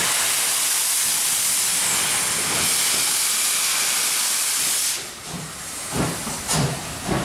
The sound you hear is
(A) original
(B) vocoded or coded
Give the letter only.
A